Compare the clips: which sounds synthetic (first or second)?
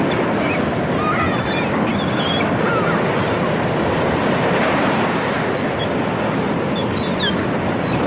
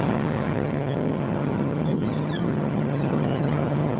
second